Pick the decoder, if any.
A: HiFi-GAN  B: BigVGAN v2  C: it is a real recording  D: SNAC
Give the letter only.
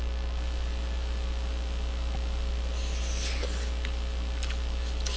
C